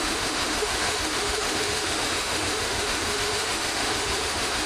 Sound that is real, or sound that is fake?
fake